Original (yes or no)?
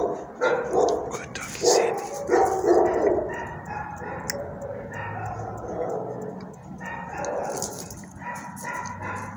yes